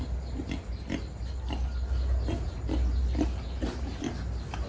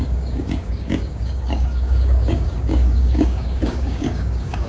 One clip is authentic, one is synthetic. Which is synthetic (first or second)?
second